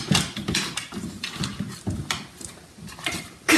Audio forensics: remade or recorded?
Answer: recorded